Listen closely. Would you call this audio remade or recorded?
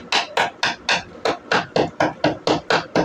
recorded